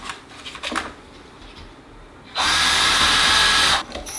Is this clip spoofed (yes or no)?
no